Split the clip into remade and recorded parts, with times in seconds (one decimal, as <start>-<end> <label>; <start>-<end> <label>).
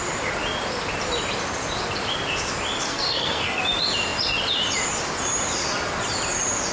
0.0-2.9 recorded; 2.9-3.6 remade; 3.6-6.7 recorded